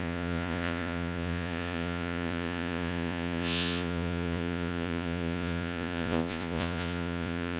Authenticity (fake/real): fake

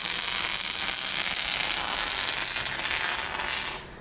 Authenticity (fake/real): real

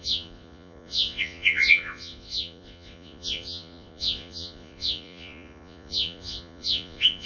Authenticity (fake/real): fake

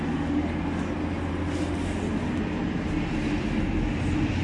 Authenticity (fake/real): real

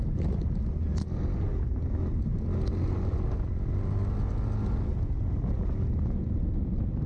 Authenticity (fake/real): real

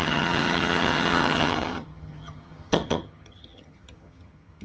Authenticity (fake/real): fake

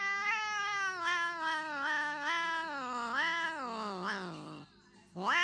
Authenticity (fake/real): real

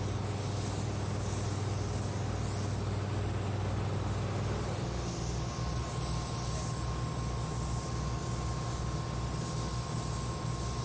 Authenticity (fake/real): real